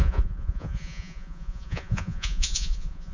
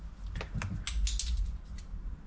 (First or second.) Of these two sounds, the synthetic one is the first